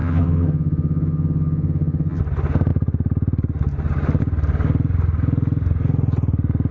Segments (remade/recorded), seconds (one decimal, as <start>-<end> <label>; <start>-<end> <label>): 0.0-2.2 remade; 2.2-6.7 recorded